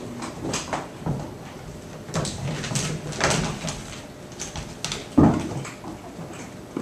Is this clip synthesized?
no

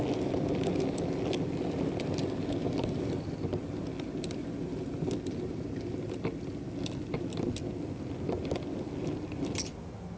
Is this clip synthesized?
no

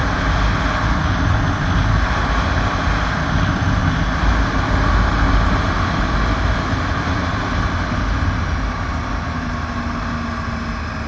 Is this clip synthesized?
no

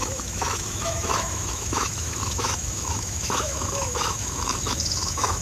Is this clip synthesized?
yes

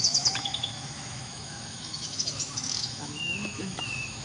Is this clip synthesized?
yes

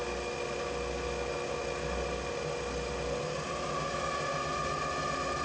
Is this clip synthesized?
no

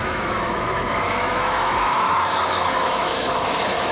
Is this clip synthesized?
yes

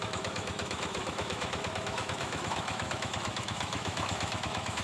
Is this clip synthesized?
yes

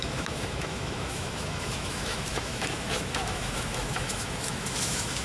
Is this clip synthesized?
yes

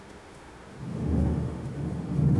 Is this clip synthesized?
yes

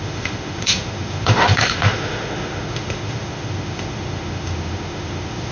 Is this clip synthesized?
yes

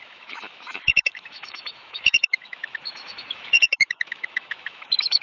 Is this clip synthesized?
yes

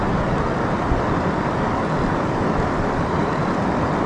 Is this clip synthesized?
no